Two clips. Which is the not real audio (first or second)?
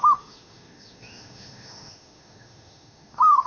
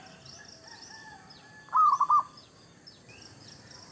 first